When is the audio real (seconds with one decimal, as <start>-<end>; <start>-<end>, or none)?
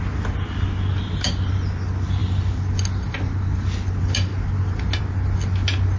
0.0-6.0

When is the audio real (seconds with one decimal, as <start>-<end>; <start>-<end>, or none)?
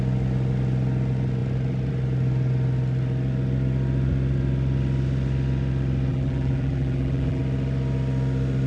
0.0-6.1; 7.4-8.7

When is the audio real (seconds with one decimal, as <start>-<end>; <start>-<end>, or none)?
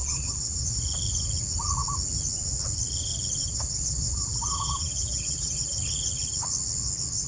0.8-3.4; 5.7-7.3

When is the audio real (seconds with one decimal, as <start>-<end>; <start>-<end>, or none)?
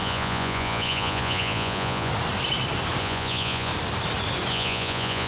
2.1-3.0; 3.7-4.5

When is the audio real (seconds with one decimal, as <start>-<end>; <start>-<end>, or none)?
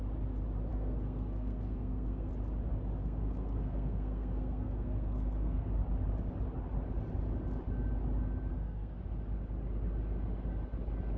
0.0-0.7; 2.3-3.0; 5.7-8.5; 9.0-11.2